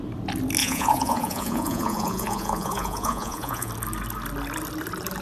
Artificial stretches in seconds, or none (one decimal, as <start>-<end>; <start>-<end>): 0.6-3.7